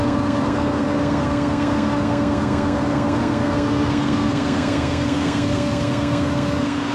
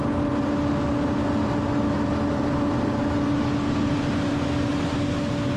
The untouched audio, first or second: second